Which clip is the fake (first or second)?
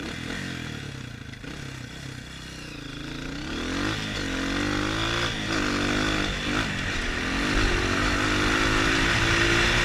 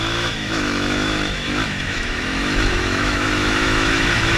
second